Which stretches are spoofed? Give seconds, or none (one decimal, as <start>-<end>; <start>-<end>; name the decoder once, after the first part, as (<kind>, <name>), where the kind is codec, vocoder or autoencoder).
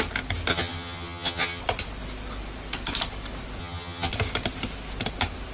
0.5-1.6 (vocoder, HiFi-GAN); 3.6-4.1